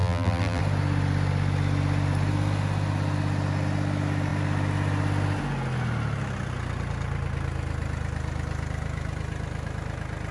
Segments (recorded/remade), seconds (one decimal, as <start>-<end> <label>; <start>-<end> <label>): 0.0-0.6 remade; 0.6-10.3 recorded

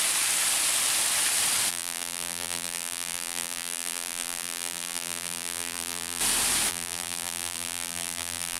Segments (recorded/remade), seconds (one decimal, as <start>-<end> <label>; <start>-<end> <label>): 0.0-1.7 recorded; 1.7-6.2 remade; 6.2-6.7 recorded; 6.7-8.6 remade

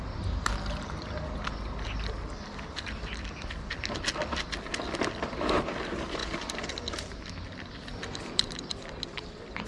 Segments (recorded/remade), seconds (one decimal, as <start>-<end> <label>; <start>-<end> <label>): 0.0-7.9 recorded; 7.9-8.7 remade; 8.7-9.7 recorded

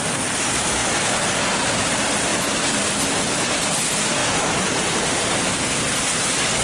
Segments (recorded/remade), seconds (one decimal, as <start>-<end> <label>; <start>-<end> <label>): 0.0-0.8 remade; 0.8-1.9 recorded; 1.9-2.3 remade; 2.3-3.3 recorded; 3.3-4.2 remade; 4.2-5.7 recorded; 5.7-6.6 remade

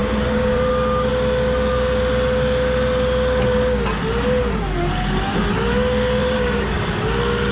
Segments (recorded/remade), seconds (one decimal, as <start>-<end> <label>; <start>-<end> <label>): 0.0-0.7 remade; 0.7-6.2 recorded; 6.2-6.8 remade; 6.8-7.5 recorded

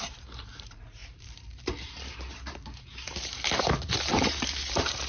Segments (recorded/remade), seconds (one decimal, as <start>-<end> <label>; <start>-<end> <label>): 0.0-5.1 remade

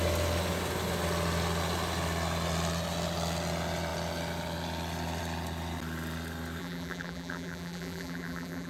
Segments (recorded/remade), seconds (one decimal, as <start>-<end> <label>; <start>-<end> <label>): 0.0-6.6 recorded; 6.6-8.7 remade

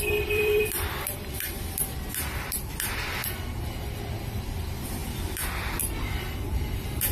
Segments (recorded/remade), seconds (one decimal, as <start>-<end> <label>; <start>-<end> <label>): 0.0-7.1 remade